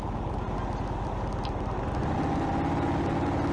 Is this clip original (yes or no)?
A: yes